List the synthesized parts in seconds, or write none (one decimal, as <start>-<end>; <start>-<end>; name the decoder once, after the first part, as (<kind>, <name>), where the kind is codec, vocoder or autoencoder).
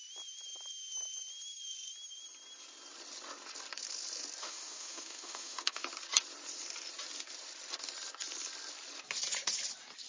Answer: 4.4-5.8 (autoencoder, DAC-VAE)